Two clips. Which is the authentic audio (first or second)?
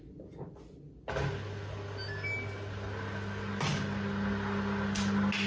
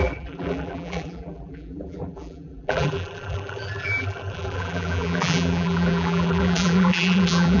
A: first